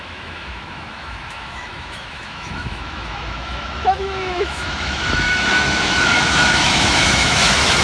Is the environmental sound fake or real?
fake